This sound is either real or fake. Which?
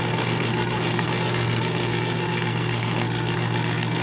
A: fake